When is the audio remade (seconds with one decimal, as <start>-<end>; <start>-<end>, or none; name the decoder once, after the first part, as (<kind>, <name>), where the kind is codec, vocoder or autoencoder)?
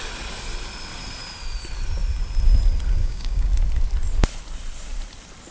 3.0-3.5 (codec, DAC)